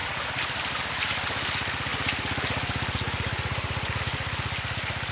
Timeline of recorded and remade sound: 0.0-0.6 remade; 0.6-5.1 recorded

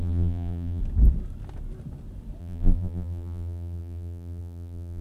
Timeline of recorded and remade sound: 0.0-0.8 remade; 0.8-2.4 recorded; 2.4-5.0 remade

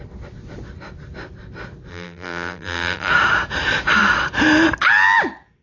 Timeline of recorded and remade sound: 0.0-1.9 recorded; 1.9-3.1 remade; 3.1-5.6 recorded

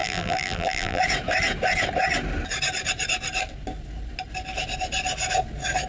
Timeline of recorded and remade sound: 0.0-1.0 remade; 1.0-5.9 recorded

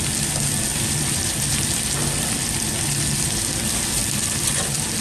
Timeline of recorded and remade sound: 0.0-0.7 recorded; 0.7-1.6 remade; 1.6-4.0 recorded; 4.0-5.0 remade

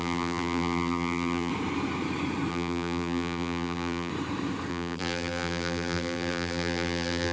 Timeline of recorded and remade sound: 0.0-1.5 remade; 1.5-2.5 recorded; 2.5-4.1 remade; 4.1-4.7 recorded; 4.7-7.3 remade

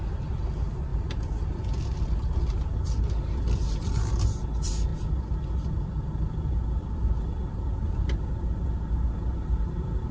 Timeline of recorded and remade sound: 0.0-4.9 recorded; 4.9-8.3 remade; 8.3-10.1 recorded

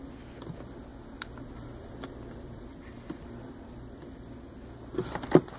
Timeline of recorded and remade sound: 0.0-0.9 recorded; 0.9-4.3 remade; 4.3-5.6 recorded